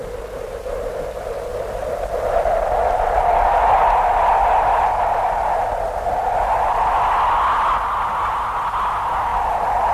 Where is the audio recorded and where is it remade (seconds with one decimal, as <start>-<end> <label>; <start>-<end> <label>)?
0.0-9.3 recorded; 9.3-9.9 remade